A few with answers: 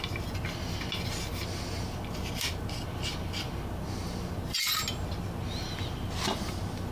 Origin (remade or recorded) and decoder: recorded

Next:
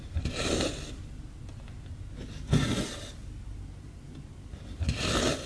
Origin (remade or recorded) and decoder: recorded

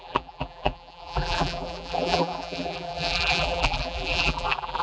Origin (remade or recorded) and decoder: remade, vocoder, BigVGAN v2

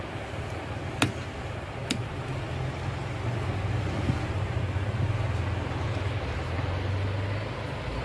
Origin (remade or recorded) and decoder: recorded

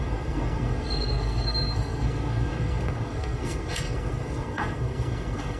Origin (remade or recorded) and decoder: remade, codec, SNAC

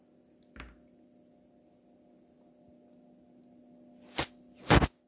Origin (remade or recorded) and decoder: recorded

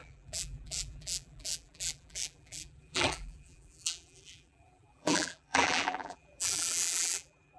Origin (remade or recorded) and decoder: remade, vocoder, BigVGAN v2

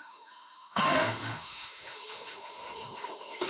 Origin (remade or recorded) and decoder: remade, autoencoder, DAC-VAE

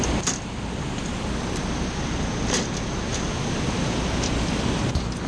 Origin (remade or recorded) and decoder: recorded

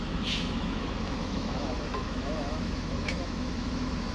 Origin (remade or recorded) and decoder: remade, autoencoder, DAC-VAE